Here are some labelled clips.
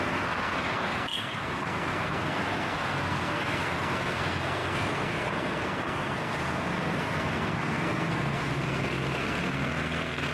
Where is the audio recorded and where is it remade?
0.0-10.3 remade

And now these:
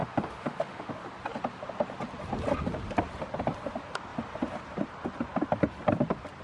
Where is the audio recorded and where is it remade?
0.0-0.9 remade; 0.9-6.4 recorded

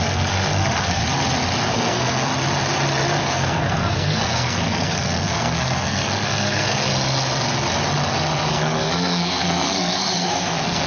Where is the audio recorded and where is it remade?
0.0-1.0 remade; 1.0-1.7 recorded; 1.7-2.3 remade; 2.3-3.2 recorded; 3.2-6.9 remade; 6.9-8.5 recorded; 8.5-10.9 remade

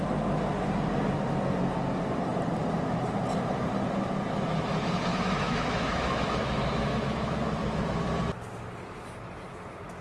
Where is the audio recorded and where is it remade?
0.0-5.1 recorded; 5.1-7.8 remade; 7.8-10.0 recorded

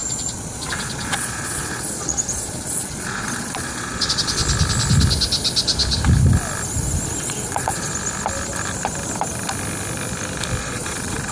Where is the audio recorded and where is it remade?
0.0-4.4 remade; 4.4-7.2 recorded; 7.2-7.9 remade; 7.9-10.6 recorded; 10.6-11.3 remade

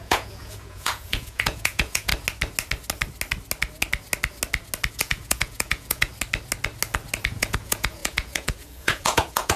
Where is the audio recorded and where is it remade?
0.0-2.1 remade; 2.1-4.9 recorded; 4.9-6.1 remade; 6.1-7.3 recorded; 7.3-9.6 remade

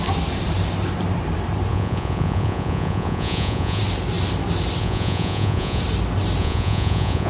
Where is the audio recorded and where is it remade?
0.0-1.7 recorded; 1.7-3.8 remade; 3.8-4.8 recorded; 4.8-5.8 remade; 5.8-6.4 recorded; 6.4-7.3 remade

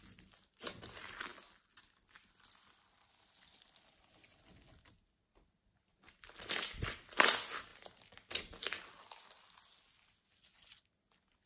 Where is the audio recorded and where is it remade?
0.0-11.5 recorded